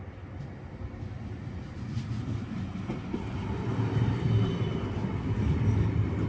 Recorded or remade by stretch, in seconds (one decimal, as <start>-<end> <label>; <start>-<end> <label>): 0.0-6.3 recorded